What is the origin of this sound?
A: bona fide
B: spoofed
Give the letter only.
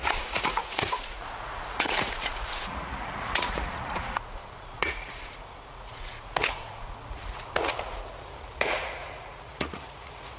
B